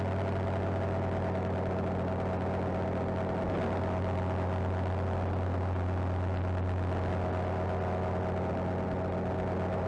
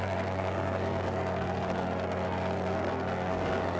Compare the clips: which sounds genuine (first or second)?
first